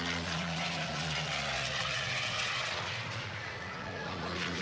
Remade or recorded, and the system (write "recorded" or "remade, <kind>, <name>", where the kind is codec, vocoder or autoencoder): remade, vocoder, Vocos